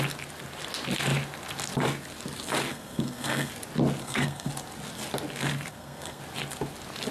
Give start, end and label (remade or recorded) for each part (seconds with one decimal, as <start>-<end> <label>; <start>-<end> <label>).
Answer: 0.0-2.7 recorded; 2.7-3.5 remade; 3.5-4.0 recorded; 4.0-4.5 remade; 4.5-5.7 recorded; 5.7-6.2 remade; 6.2-7.1 recorded